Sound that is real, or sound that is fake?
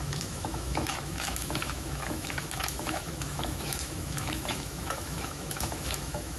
fake